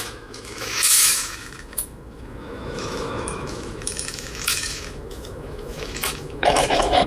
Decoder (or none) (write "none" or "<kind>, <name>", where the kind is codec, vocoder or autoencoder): autoencoder, DAC-VAE